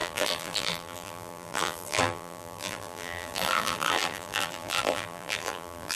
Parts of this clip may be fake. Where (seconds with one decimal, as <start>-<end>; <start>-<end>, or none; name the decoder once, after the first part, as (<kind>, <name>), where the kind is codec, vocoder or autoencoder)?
0.0-6.0 (vocoder, BigVGAN v2)